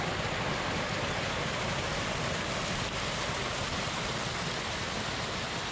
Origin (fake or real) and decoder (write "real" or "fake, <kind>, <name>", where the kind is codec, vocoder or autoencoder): real